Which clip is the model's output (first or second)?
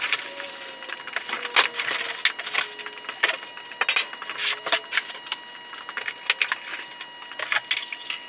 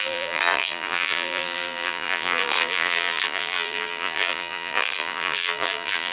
second